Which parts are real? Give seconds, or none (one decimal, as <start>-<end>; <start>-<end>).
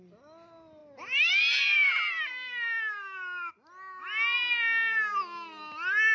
0.0-6.1